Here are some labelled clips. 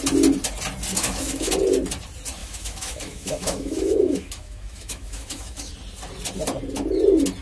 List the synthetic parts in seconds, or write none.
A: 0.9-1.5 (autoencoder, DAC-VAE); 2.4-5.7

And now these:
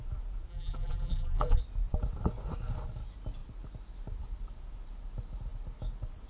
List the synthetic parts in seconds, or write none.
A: 0.5-1.6 (vocoder, BigVGAN v2)

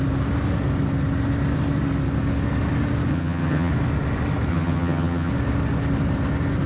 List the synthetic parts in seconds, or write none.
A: 3.1-3.7 (vocoder, HiFi-GAN); 4.5-5.3

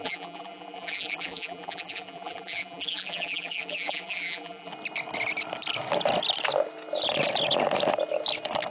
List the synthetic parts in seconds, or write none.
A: 0.0-4.7 (vocoder, BigVGAN v2)